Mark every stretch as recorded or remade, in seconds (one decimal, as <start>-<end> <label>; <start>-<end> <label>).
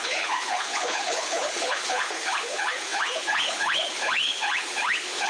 0.0-5.3 remade